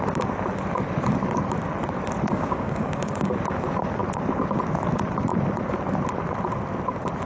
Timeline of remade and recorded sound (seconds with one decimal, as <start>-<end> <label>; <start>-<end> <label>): 0.0-2.3 recorded; 2.3-3.3 remade; 3.3-7.3 recorded